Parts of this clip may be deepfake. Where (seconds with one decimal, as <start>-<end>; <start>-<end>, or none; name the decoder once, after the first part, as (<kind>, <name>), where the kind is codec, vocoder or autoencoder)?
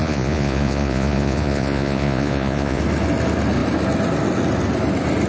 0.0-2.8 (vocoder, Vocos)